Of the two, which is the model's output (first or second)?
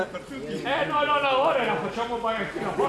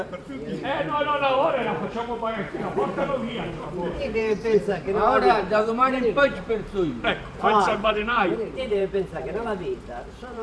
second